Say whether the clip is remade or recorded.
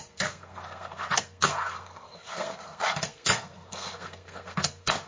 remade